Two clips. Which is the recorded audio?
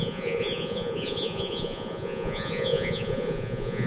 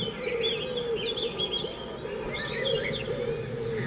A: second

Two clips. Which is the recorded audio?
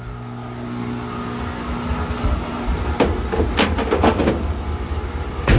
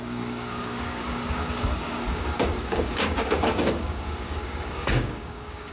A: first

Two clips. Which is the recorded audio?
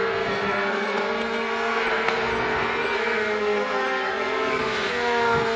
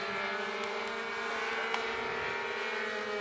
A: second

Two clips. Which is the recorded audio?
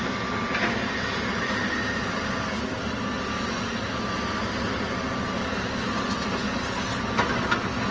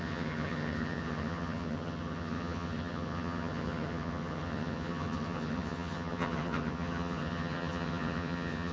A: first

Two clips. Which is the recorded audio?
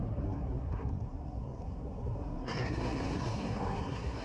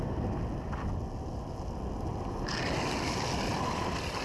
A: second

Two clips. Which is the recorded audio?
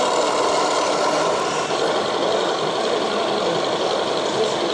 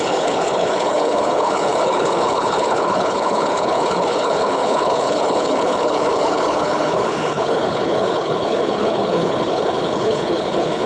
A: first